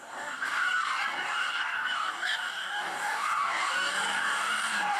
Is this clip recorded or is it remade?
remade